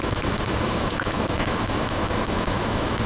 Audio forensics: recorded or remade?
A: remade